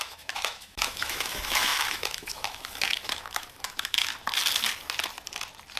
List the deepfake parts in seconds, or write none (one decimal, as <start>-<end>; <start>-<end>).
0.0-4.1